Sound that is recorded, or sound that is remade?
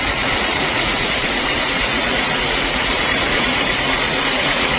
remade